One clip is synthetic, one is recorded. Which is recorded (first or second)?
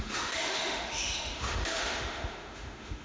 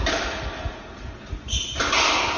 second